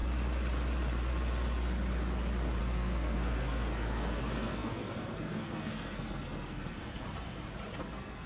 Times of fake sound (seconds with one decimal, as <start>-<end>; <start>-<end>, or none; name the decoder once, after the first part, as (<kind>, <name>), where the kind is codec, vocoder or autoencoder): 2.6-6.8 (codec, SNAC); 7.8-8.3